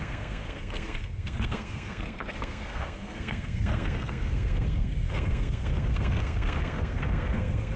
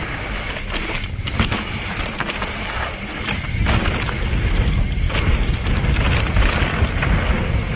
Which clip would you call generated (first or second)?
first